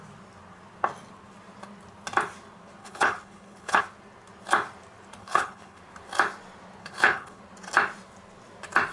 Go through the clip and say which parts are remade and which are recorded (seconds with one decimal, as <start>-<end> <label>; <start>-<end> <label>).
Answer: 0.0-2.8 recorded; 2.8-3.8 remade; 3.8-5.2 recorded; 5.2-5.8 remade; 5.8-6.8 recorded; 6.8-7.4 remade; 7.4-8.9 recorded

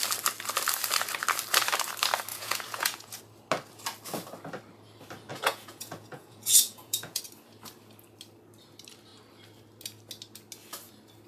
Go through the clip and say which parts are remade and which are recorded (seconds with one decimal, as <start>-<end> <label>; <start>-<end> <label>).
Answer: 0.0-2.3 recorded; 2.3-3.2 remade; 3.2-5.3 recorded; 5.3-7.2 remade; 7.2-11.3 recorded

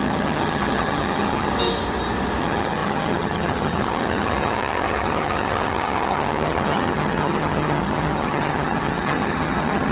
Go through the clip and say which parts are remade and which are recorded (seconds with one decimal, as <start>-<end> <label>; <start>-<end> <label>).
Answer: 0.0-1.5 remade; 1.5-2.4 recorded; 2.4-9.9 remade

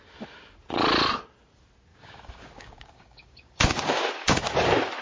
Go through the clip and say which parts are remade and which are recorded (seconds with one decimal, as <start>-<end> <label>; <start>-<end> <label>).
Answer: 0.0-1.9 recorded; 1.9-4.1 remade; 4.1-5.0 recorded

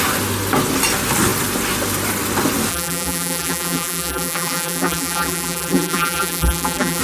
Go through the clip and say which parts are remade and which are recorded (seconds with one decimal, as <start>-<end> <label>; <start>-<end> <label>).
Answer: 0.0-2.7 recorded; 2.7-7.0 remade